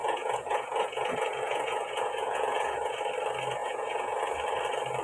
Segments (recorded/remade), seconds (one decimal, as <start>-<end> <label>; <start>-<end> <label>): 0.0-3.0 remade; 3.0-3.6 recorded; 3.6-4.2 remade; 4.2-5.0 recorded